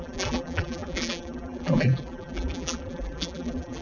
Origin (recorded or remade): remade